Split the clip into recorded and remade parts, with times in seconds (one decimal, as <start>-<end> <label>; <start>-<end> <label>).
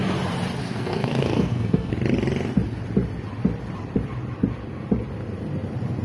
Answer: 0.0-0.6 recorded; 0.6-1.9 remade; 1.9-6.0 recorded